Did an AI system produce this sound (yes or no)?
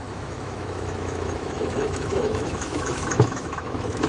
yes